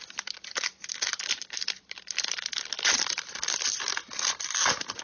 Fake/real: real